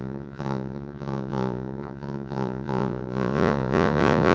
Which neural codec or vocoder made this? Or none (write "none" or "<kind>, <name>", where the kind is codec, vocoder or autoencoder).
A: vocoder, Vocos